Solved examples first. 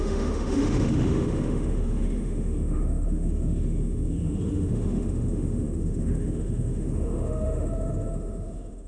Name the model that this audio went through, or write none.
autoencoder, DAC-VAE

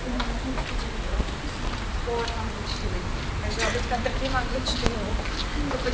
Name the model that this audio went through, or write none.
none